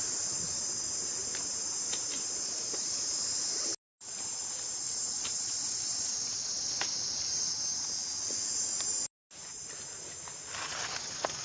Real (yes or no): yes